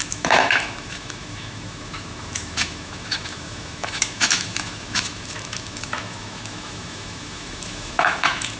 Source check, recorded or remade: remade